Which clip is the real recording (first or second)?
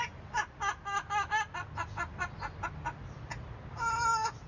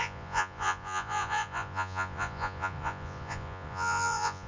first